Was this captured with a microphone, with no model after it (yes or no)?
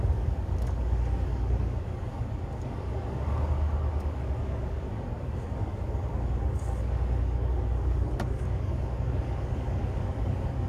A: no